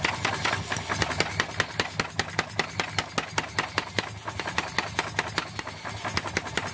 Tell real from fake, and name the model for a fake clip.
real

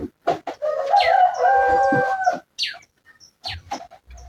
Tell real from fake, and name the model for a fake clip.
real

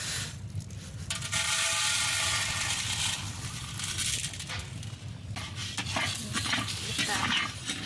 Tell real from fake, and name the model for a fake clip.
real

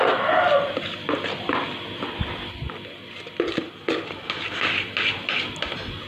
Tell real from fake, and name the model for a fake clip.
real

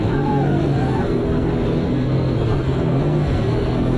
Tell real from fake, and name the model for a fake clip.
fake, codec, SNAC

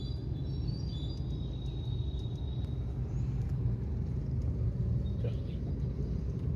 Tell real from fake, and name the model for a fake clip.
real